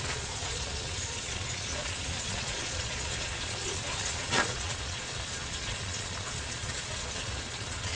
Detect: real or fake fake